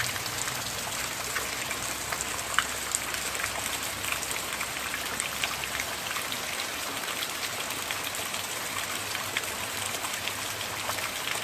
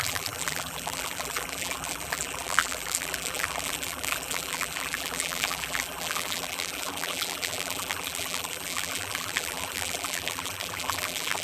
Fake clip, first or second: second